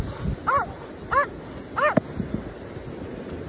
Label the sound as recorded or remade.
recorded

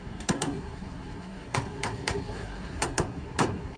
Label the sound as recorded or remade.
remade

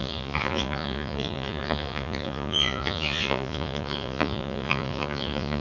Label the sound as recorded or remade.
remade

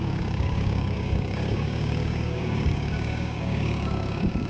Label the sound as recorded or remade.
remade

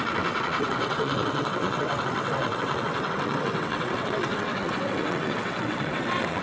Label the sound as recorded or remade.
remade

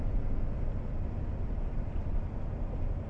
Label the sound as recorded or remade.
recorded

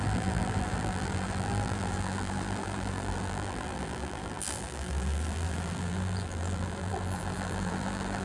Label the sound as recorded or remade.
remade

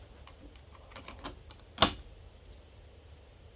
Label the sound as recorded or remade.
recorded